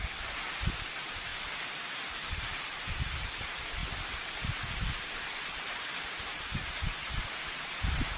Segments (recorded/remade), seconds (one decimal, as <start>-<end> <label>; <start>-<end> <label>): 0.0-2.5 recorded; 2.5-3.2 remade; 3.2-8.2 recorded